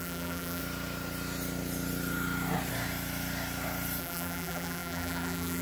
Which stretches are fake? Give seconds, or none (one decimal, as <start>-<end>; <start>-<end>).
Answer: 0.0-0.6; 4.0-5.6